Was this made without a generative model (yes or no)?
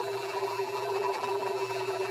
no